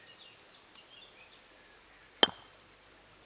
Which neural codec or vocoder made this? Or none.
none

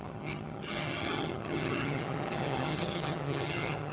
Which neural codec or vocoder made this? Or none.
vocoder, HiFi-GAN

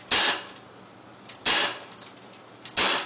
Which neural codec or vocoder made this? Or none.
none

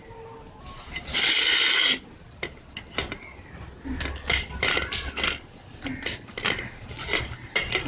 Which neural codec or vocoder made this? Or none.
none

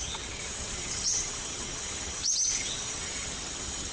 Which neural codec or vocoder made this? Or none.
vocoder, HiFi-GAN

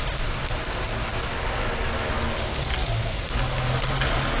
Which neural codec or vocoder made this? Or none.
none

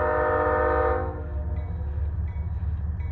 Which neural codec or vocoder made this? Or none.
none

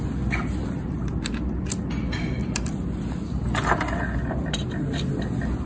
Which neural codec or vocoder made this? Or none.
none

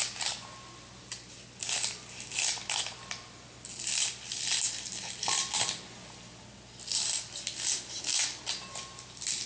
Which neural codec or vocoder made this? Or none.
none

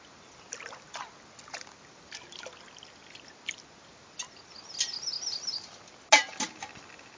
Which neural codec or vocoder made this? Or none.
none